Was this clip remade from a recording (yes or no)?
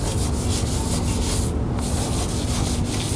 no